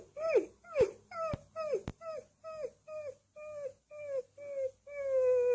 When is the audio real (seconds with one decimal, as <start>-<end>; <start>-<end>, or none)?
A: 0.0-5.5